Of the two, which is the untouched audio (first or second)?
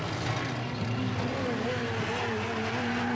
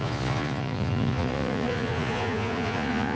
first